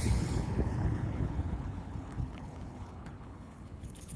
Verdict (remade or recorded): remade